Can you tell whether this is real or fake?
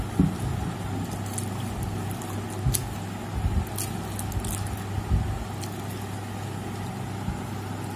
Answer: real